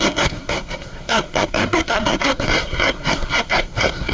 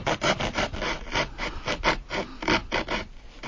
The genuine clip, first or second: second